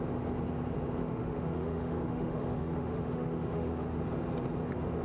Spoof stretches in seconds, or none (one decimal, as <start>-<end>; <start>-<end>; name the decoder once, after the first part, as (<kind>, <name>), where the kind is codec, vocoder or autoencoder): 1.0-4.0 (autoencoder, DAC-VAE)